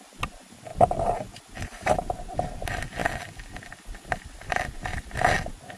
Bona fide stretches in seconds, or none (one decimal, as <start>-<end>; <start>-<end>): 0.0-5.8